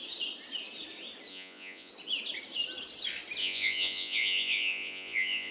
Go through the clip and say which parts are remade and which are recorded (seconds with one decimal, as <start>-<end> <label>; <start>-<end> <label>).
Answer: 0.0-1.3 recorded; 1.3-1.9 remade; 1.9-3.4 recorded; 3.4-5.5 remade